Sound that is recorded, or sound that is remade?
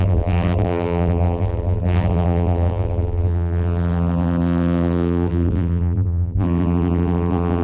remade